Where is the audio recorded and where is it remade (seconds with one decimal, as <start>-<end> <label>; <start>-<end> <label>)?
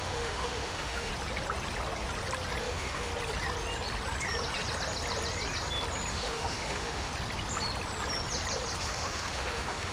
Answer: 0.0-1.1 remade; 1.1-2.6 recorded; 2.6-3.1 remade; 3.1-6.1 recorded; 6.1-7.1 remade; 7.1-8.8 recorded; 8.8-9.9 remade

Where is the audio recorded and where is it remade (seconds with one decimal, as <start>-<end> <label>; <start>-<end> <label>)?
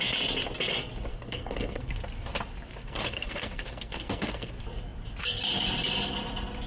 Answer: 0.0-1.1 recorded; 1.1-2.0 remade; 2.0-2.8 recorded; 2.8-4.5 remade; 4.5-6.7 recorded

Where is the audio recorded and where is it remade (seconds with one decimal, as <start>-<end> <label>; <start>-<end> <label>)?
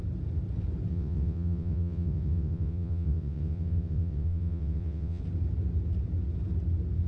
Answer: 0.0-0.9 recorded; 0.9-5.2 remade; 5.2-7.1 recorded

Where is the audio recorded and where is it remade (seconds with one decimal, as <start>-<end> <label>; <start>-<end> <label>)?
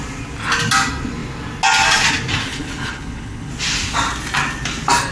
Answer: 0.0-2.5 recorded; 2.5-3.5 remade; 3.5-5.1 recorded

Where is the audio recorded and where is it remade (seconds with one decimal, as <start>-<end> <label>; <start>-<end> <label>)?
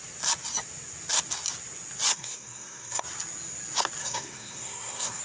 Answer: 0.0-2.1 recorded; 2.1-3.0 remade; 3.0-4.0 recorded; 4.0-5.2 remade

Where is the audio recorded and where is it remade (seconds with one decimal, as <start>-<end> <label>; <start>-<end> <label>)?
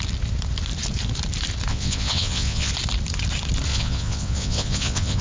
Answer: 0.0-1.7 recorded; 1.7-2.7 remade; 2.7-3.7 recorded; 3.7-5.2 remade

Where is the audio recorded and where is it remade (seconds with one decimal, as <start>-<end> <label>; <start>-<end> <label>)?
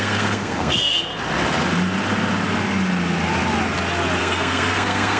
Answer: 0.0-1.1 remade; 1.1-4.2 recorded; 4.2-5.2 remade